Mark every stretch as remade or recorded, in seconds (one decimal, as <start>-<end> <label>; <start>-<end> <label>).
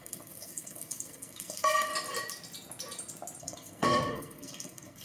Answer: 0.0-1.9 remade; 1.9-3.4 recorded; 3.4-5.0 remade